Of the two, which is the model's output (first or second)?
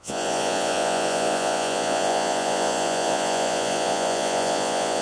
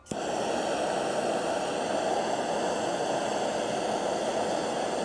first